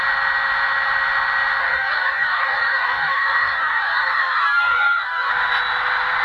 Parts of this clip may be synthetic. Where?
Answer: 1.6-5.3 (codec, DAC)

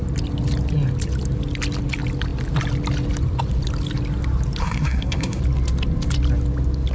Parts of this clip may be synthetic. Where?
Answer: 4.6-5.4 (codec, SNAC)

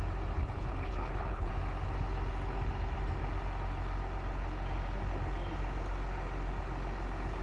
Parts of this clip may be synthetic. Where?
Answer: 0.4-1.5 (codec, HILCodec)